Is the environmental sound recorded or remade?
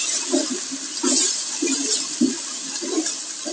remade